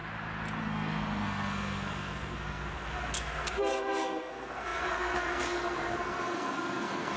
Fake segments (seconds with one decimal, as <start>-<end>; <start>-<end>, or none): 0.6-7.2